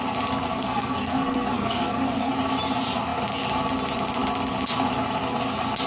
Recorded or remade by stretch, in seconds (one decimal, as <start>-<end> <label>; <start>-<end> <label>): 0.0-0.5 recorded; 0.5-2.3 remade; 2.3-5.9 recorded